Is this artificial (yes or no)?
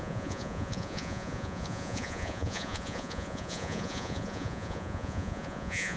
yes